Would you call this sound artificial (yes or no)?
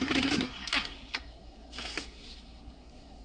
yes